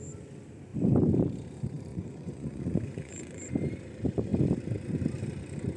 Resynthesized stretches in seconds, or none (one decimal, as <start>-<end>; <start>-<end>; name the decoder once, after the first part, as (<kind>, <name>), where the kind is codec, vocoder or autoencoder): 1.9-3.5 (vocoder, Vocos)